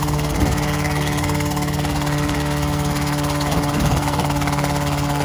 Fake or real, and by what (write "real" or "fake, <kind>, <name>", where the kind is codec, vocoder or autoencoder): fake, codec, SNAC